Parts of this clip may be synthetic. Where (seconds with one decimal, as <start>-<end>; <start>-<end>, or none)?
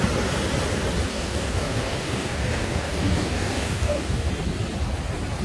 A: 1.1-4.3